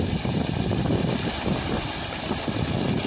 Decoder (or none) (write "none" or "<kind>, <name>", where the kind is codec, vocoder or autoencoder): none